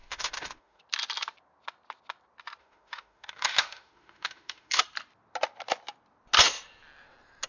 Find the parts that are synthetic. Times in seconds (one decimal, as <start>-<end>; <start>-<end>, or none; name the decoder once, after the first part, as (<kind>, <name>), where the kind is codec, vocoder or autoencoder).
0.0-0.8 (autoencoder, DAC-VAE); 2.6-4.8